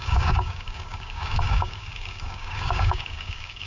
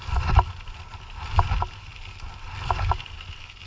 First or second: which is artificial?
first